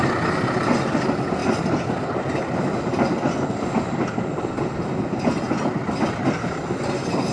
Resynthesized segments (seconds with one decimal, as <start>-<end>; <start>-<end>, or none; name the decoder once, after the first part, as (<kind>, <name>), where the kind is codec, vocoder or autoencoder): none